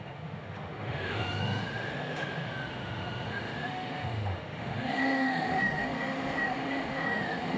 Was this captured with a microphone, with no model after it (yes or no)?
no